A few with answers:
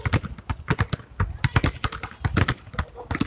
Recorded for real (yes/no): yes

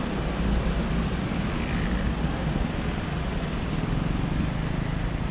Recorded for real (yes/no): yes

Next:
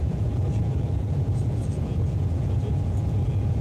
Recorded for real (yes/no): no